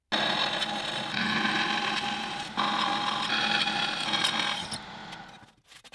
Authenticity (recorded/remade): recorded